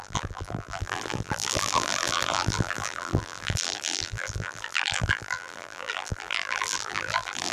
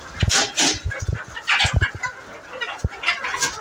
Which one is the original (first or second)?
second